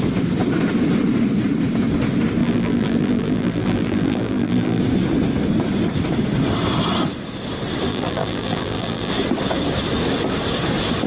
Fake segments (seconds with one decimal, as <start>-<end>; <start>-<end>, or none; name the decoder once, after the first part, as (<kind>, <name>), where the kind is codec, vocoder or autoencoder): 2.4-4.8 (vocoder, BigVGAN v2); 7.9-9.1